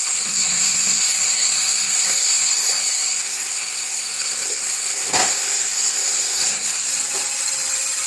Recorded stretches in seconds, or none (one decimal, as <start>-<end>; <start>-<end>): 6.9-8.1